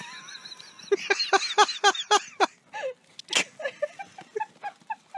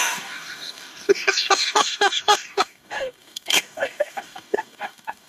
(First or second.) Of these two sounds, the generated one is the second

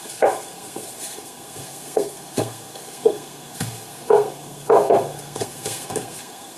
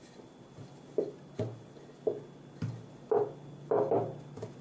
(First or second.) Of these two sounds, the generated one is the first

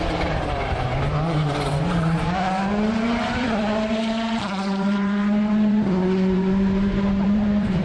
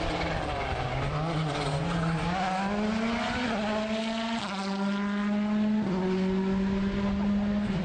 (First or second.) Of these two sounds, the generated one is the first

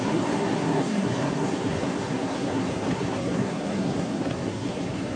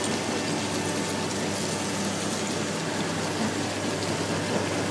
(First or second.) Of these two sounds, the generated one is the first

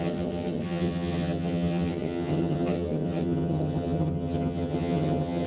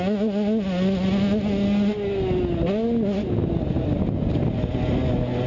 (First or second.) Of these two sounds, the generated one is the first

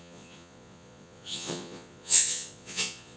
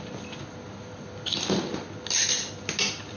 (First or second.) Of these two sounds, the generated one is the first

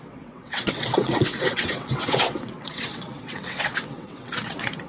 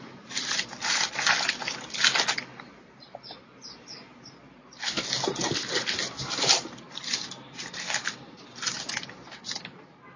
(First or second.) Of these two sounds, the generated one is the first